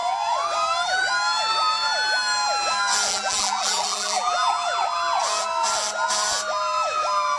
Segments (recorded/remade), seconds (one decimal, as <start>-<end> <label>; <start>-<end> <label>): 0.0-3.1 recorded; 3.1-4.5 remade; 4.5-7.4 recorded